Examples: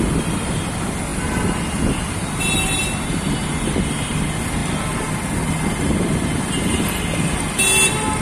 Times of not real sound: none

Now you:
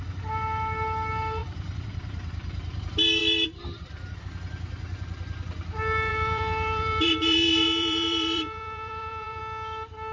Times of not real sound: 1.4-2.8 (vocoder, BigVGAN v2); 3.2-4.2; 6.1-9.4